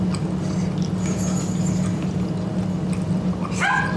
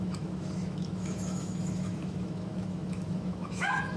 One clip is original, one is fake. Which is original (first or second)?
first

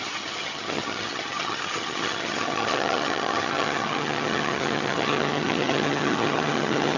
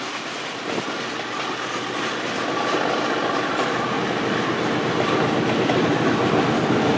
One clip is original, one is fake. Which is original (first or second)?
second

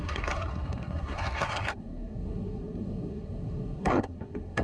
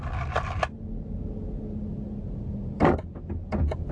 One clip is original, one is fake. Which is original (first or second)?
second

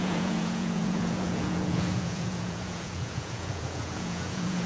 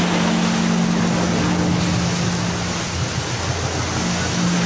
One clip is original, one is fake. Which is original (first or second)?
second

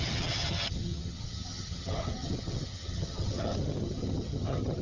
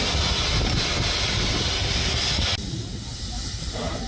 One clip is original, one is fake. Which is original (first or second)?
second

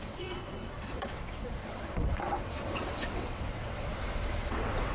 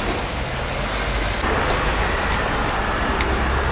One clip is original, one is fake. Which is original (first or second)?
second